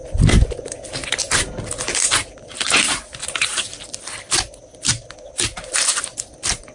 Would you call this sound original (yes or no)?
yes